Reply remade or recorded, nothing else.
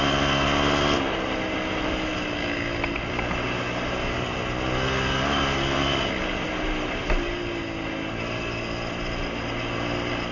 recorded